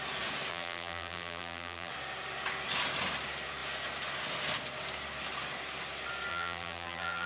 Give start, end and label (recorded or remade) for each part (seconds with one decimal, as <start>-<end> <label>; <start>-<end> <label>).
0.0-0.5 recorded; 0.5-1.9 remade; 1.9-6.3 recorded; 6.3-7.3 remade